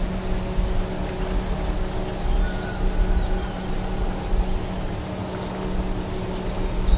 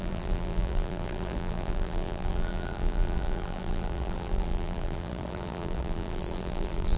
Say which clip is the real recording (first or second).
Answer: first